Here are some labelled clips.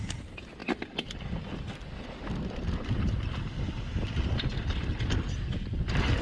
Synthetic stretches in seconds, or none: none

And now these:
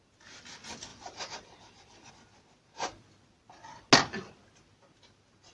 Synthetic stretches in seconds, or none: 0.9-2.1 (vocoder, BigVGAN v2)

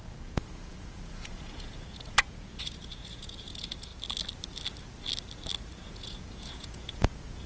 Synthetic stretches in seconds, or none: 0.0-3.9 (vocoder, Vocos); 5.9-7.5

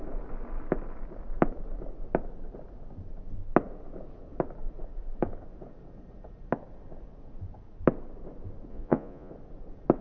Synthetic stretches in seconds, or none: 8.7-9.3 (vocoder, Vocos)